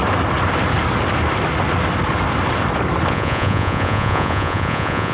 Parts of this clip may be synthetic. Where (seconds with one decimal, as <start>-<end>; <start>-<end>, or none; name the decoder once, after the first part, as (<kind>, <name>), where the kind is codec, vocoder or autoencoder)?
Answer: 3.1-5.1 (vocoder, Vocos)